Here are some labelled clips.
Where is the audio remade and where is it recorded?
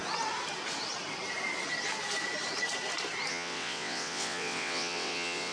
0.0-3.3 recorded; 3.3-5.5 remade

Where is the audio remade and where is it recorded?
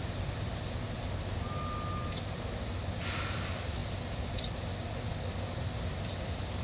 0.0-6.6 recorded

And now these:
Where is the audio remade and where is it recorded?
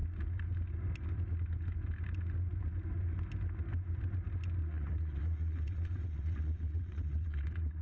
0.0-4.6 recorded; 4.6-7.8 remade